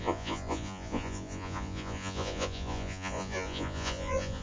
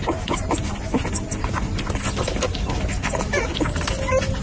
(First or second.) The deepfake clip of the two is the first